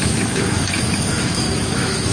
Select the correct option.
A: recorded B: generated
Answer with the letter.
B